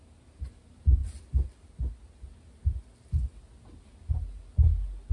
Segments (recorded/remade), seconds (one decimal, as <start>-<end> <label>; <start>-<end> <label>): 0.0-5.1 recorded

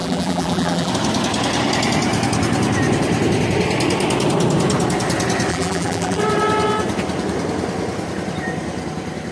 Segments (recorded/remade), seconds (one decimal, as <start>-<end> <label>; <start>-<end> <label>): 0.0-0.9 remade; 0.9-5.5 recorded; 5.5-6.2 remade; 6.2-9.3 recorded